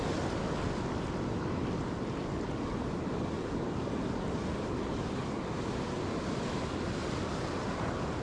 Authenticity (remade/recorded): recorded